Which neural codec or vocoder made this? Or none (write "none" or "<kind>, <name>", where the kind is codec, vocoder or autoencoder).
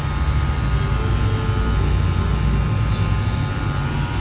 none